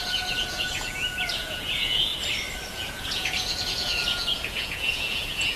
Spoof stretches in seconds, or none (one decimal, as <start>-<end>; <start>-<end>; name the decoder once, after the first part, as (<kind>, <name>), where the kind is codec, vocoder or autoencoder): 0.0-2.1 (vocoder, Vocos); 2.7-5.6